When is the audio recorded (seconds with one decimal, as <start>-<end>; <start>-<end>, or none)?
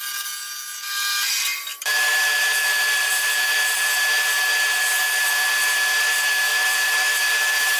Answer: 0.0-1.7; 4.4-6.5